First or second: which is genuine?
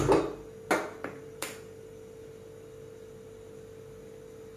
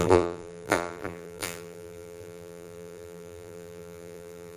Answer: first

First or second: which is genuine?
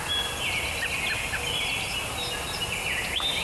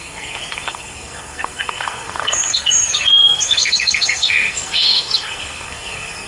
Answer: first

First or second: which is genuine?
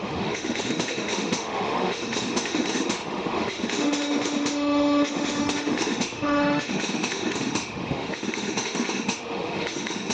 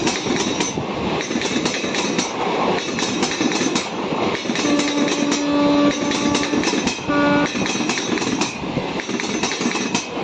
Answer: second